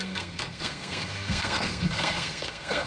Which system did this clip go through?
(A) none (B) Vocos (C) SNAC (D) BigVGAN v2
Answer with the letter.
C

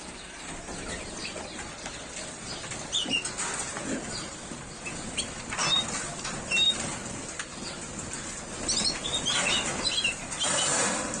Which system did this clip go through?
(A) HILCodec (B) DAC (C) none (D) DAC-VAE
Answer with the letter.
C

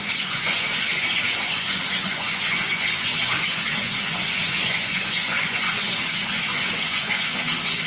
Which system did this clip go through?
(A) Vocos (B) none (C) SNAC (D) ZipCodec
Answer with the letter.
A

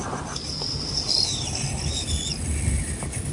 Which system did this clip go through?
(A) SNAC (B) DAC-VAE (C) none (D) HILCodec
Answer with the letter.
C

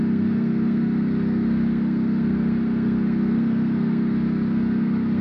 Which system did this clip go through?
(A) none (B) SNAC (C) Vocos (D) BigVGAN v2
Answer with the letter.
B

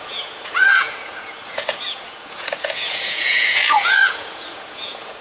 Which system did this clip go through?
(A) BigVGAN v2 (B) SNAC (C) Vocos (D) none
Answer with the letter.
C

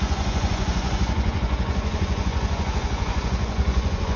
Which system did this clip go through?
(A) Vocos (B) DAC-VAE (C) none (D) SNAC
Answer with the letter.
A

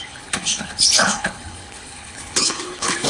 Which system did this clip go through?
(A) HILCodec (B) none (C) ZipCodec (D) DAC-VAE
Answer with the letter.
A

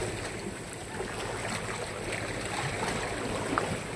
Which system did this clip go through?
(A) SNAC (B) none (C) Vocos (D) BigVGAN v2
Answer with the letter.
B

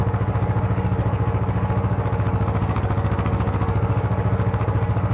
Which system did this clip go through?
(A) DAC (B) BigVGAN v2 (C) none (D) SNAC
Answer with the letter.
A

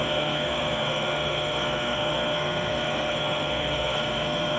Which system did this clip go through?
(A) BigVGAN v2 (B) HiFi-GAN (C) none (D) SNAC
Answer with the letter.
D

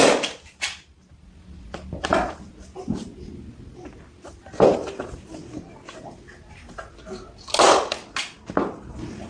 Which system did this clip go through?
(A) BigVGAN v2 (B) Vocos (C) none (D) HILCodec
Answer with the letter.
C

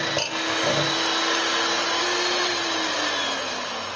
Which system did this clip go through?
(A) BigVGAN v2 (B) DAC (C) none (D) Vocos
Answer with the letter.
C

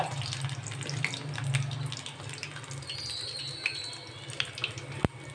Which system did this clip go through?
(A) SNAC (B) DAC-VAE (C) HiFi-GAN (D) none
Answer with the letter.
D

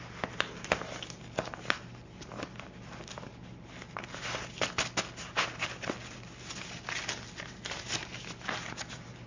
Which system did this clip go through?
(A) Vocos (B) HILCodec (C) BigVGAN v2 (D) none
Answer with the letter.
D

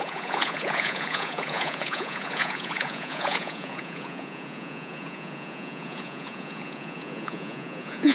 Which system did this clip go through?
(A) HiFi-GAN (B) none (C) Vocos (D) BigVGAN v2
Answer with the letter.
C